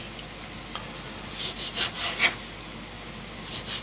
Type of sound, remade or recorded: recorded